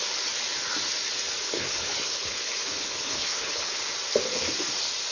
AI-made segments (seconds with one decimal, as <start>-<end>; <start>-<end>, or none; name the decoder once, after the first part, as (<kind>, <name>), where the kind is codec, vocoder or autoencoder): 1.4-3.8 (codec, HILCodec)